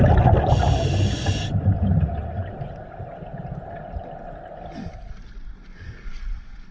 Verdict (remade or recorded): recorded